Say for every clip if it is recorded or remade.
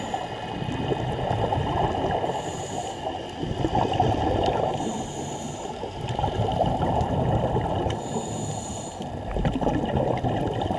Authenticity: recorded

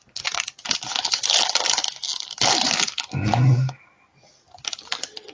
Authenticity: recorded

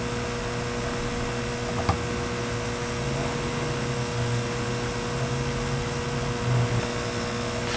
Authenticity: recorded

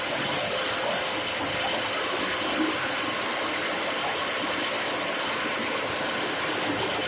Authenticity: recorded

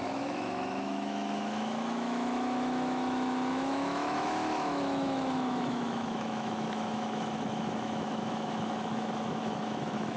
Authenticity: remade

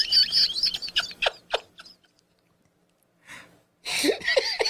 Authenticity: recorded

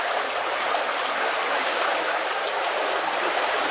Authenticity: recorded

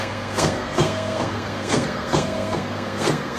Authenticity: remade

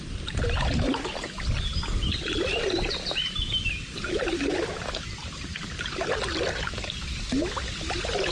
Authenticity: recorded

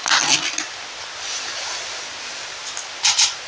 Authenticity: recorded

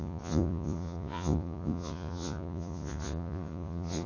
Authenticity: remade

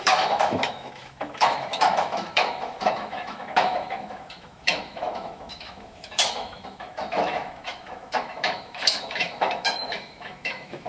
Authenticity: remade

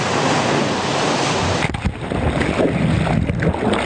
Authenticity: recorded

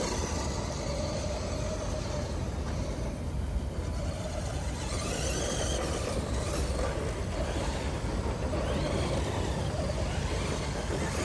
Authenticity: recorded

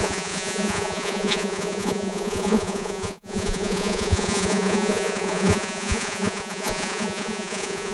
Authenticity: remade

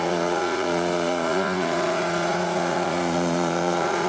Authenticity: remade